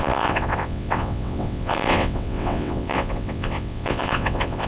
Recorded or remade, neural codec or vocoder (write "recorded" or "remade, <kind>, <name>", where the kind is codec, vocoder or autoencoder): remade, vocoder, WaveNeXt